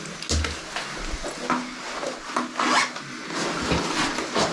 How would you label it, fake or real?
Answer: real